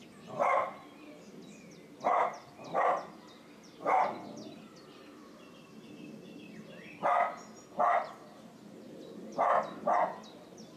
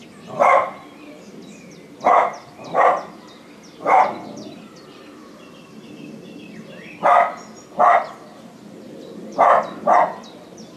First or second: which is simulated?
second